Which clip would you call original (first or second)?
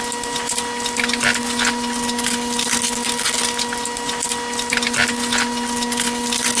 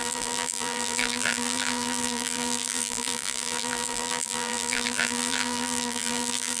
first